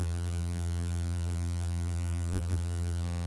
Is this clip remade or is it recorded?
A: remade